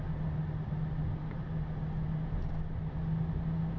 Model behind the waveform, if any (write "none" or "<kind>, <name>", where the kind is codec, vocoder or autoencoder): none